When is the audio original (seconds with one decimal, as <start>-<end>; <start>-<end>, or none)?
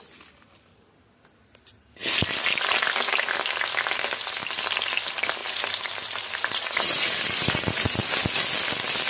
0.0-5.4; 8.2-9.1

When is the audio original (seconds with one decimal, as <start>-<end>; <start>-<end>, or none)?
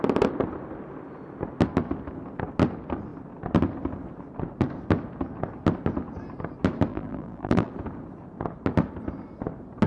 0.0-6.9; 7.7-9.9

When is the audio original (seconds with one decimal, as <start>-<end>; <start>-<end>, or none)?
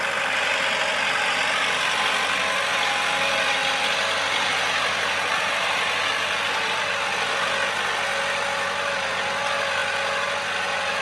0.0-11.0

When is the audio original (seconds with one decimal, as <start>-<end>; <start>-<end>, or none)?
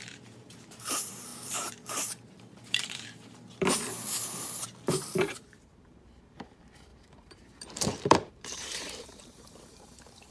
none